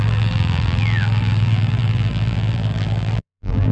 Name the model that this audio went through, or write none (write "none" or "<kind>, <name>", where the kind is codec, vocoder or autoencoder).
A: vocoder, BigVGAN v2